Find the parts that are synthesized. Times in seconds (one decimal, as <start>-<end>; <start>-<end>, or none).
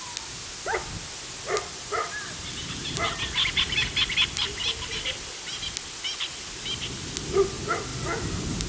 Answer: none